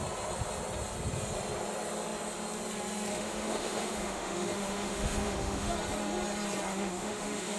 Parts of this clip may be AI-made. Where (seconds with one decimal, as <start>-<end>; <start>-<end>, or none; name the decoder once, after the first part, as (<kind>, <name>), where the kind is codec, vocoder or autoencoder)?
3.1-5.7 (autoencoder, DAC-VAE); 6.7-7.6